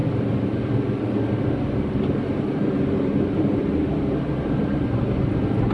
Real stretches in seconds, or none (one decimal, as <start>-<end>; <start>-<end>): 0.0-2.9; 3.6-4.4